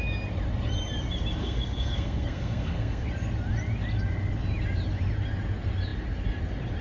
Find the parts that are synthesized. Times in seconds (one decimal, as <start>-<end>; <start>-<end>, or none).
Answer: 1.4-3.1